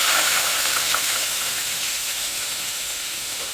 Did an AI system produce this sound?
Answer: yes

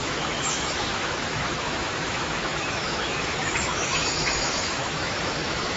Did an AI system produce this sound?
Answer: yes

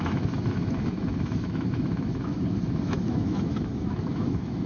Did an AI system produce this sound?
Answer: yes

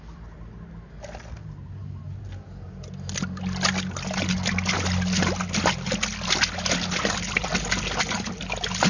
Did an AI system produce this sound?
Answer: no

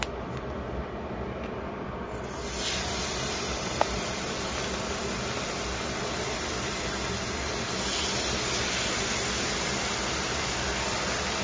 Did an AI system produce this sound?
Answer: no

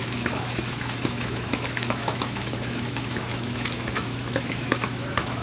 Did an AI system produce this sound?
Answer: yes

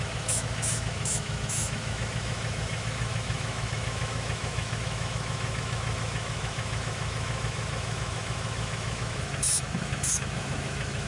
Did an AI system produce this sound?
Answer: yes